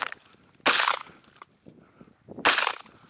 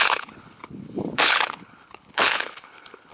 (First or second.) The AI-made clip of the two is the second